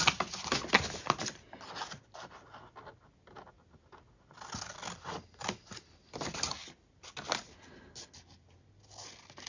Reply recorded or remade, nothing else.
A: recorded